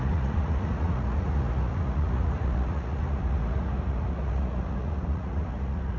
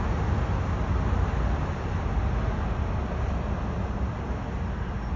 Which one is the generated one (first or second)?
first